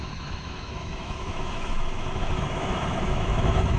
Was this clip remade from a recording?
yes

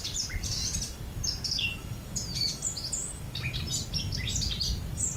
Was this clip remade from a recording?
no